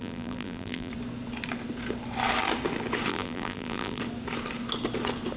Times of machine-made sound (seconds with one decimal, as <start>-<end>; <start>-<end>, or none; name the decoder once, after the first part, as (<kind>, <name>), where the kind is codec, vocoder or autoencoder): 0.0-0.9 (vocoder, BigVGAN v2); 3.1-4.0

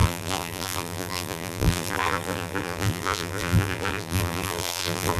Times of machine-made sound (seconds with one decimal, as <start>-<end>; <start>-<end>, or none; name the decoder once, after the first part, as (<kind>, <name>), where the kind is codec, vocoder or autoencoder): 0.0-5.2 (vocoder, BigVGAN v2)

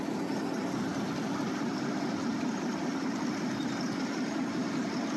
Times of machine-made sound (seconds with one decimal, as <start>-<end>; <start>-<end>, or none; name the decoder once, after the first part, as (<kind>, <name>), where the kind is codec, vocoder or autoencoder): 0.9-3.4 (vocoder, BigVGAN v2)

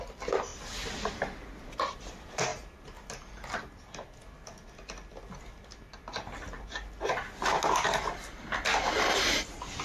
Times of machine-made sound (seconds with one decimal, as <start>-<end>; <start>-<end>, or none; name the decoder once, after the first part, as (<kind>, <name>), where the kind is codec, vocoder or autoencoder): none

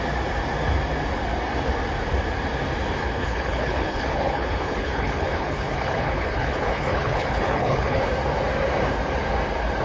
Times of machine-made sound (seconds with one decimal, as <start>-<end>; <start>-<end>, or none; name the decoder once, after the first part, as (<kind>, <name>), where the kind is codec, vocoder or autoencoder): 3.0-8.0 (codec, HILCodec)

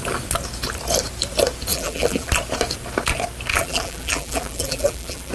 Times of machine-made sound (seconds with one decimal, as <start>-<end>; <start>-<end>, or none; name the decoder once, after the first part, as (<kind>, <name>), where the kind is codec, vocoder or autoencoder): 1.7-2.3 (vocoder, BigVGAN v2); 3.5-5.3

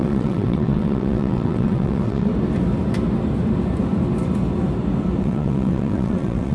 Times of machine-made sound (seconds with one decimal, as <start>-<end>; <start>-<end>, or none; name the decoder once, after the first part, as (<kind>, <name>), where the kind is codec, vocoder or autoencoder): 0.0-2.3 (vocoder, WaveNeXt); 5.2-6.5

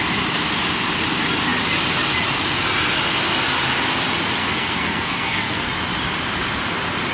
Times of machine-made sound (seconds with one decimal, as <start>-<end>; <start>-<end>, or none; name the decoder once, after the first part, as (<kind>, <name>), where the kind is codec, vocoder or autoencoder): 4.4-5.7 (codec, SNAC)